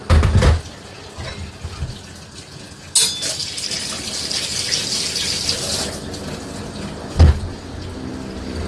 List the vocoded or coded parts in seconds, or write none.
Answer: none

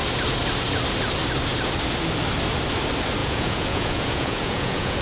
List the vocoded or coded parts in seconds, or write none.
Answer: 3.2-5.0

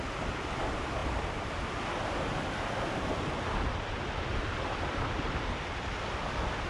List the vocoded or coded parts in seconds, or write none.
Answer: none

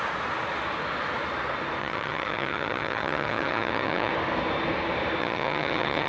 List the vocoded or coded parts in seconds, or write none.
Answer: 1.8-4.1; 5.2-6.1

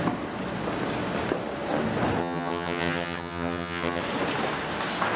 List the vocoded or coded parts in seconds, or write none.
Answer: 2.2-4.0

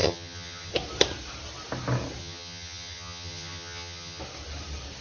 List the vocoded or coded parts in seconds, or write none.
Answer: 0.0-0.7; 2.2-4.2